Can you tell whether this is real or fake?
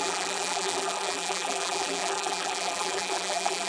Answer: fake